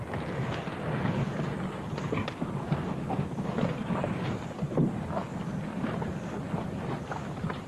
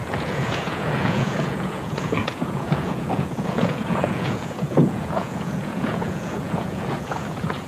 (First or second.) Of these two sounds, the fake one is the second